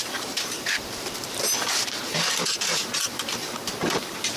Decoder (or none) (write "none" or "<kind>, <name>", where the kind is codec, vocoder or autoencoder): vocoder, BigVGAN v2